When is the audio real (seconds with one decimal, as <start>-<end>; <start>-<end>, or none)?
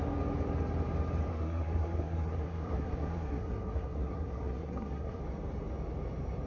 0.0-1.3; 5.2-6.5